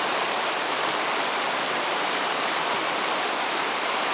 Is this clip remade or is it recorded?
remade